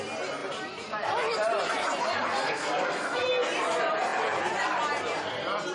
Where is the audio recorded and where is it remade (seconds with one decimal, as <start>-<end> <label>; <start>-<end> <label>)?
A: 0.0-2.3 recorded; 2.3-3.2 remade; 3.2-5.7 recorded